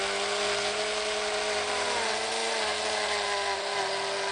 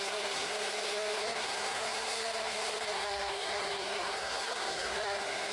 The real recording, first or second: first